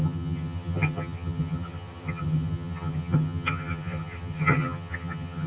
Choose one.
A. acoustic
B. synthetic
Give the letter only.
B